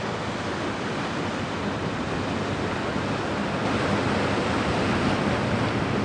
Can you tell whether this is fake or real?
real